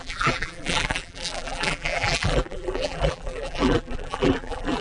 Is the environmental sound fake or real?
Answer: fake